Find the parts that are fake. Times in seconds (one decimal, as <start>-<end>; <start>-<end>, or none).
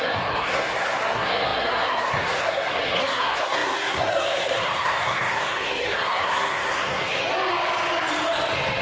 0.0-7.2